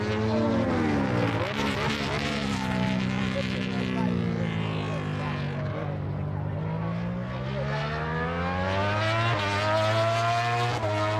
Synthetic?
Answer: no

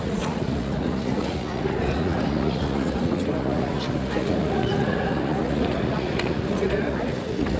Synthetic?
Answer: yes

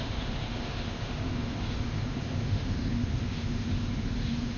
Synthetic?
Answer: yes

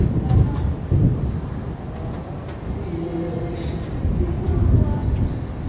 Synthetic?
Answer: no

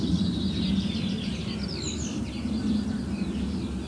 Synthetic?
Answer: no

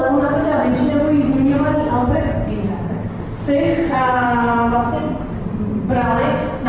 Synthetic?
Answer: no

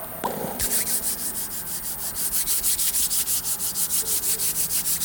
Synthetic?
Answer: no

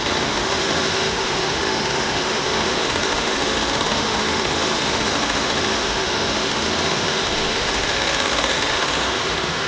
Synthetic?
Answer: yes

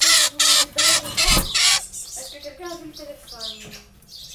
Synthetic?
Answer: no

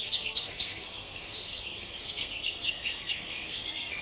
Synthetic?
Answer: yes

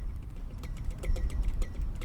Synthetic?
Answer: yes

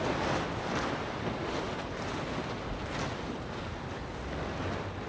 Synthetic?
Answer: no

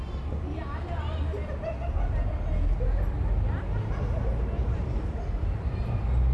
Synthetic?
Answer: no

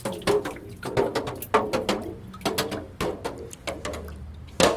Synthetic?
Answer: no